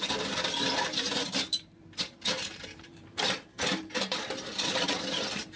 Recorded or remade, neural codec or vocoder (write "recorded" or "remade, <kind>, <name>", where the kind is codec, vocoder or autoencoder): remade, vocoder, BigVGAN v2